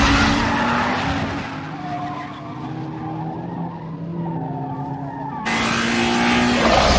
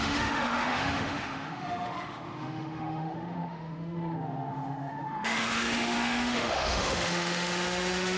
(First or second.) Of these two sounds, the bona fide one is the first